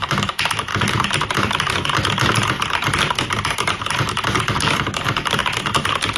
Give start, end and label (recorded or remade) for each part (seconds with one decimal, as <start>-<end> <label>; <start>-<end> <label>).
0.0-5.4 remade; 5.4-6.2 recorded